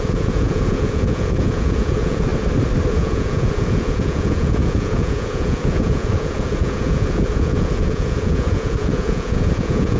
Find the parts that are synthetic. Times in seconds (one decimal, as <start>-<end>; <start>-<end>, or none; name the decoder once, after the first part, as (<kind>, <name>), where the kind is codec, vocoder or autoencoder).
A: 0.0-2.3 (vocoder, Vocos); 2.9-10.0